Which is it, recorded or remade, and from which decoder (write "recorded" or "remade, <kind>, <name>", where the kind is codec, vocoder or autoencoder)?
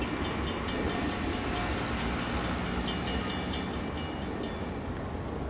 recorded